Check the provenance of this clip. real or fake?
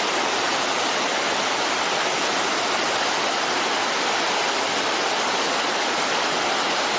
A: real